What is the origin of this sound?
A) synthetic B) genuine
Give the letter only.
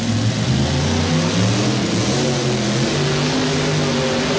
B